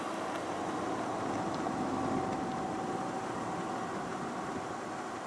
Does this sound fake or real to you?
real